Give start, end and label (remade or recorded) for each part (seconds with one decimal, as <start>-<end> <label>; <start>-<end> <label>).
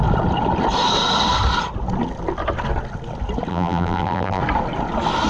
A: 0.0-3.5 recorded; 3.5-4.4 remade; 4.4-5.3 recorded